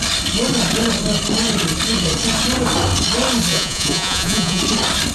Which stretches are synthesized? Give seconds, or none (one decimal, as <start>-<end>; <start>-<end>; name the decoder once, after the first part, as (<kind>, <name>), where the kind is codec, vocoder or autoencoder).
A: 3.5-4.6 (vocoder, Vocos)